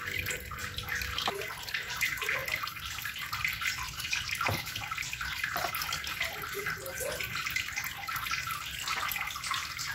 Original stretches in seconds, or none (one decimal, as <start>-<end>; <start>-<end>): 0.0-9.9